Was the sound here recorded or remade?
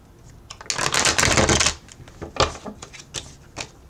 recorded